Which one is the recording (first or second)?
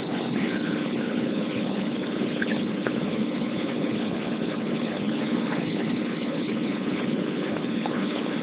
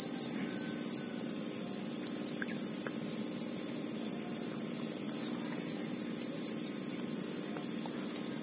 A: second